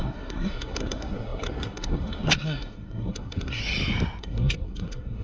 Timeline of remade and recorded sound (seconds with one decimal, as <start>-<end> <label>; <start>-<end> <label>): 0.0-3.6 remade; 3.6-4.2 recorded; 4.2-5.2 remade